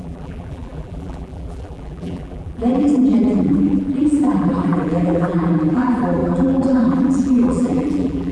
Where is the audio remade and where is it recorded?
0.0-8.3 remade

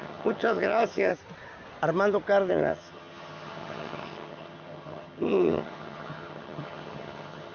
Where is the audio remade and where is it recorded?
0.0-1.1 remade; 1.1-2.5 recorded; 2.5-7.5 remade